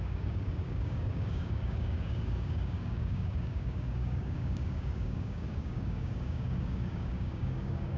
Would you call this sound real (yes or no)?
no